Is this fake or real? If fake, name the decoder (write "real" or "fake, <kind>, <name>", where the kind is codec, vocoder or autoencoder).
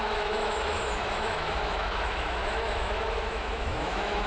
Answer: fake, autoencoder, DAC-VAE